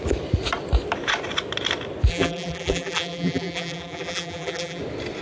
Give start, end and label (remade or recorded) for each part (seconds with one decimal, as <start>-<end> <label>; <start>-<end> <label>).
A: 0.0-2.1 recorded; 2.1-4.8 remade; 4.8-5.2 recorded